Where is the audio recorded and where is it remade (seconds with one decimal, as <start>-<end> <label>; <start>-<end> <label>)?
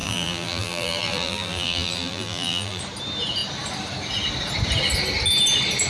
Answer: 0.0-2.8 remade; 2.8-5.9 recorded